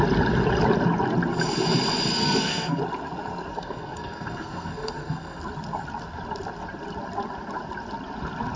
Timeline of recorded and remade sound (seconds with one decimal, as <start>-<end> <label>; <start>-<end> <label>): 0.0-2.1 recorded; 2.1-2.8 remade; 2.8-3.5 recorded; 3.5-5.4 remade; 5.4-8.6 recorded

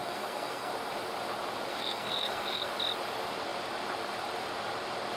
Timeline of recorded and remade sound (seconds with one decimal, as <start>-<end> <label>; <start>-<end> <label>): 0.0-0.7 remade; 0.7-1.7 recorded; 1.7-2.7 remade; 2.7-5.2 recorded

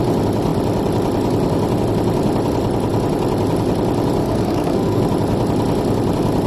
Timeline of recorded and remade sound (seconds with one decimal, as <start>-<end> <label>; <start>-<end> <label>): 0.0-4.2 recorded; 4.2-5.0 remade; 5.0-6.5 recorded

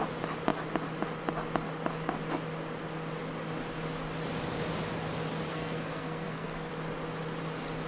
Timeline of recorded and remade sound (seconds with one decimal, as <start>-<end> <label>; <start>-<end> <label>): 0.0-5.5 recorded; 5.5-6.7 remade; 6.7-7.9 recorded